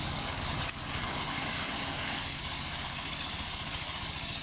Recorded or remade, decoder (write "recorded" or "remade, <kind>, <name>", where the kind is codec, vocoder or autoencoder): remade, codec, DAC